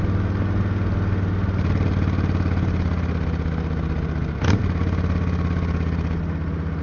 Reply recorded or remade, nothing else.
recorded